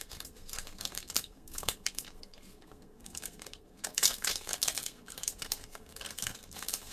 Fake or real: fake